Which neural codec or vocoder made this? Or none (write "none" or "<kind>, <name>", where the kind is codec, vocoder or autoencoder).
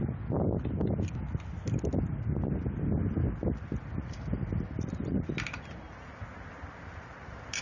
none